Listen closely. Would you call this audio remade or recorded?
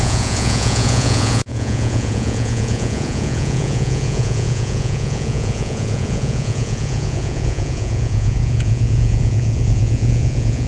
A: remade